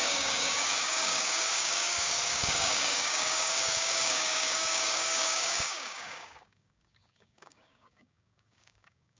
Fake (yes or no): yes